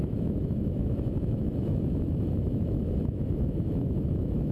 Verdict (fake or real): fake